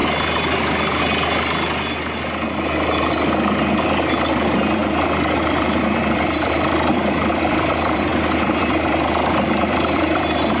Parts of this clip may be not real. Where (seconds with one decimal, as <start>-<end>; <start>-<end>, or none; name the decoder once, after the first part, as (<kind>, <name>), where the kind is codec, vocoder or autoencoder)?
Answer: 4.0-10.6 (vocoder, BigVGAN v2)